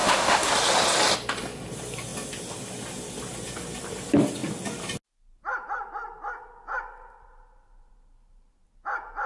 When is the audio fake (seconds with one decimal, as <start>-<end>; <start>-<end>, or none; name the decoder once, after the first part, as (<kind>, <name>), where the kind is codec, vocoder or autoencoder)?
0.0-0.5 (autoencoder, DAC-VAE)